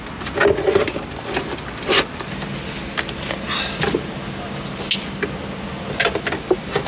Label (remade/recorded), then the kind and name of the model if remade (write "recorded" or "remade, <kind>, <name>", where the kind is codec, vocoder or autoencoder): recorded